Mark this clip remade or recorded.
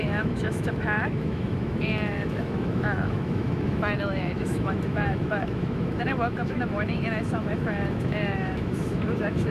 remade